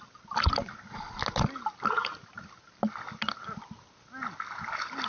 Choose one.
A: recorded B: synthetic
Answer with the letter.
A